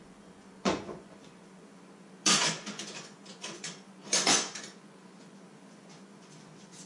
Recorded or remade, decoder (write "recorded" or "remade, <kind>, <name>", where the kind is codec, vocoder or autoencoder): remade, vocoder, Vocos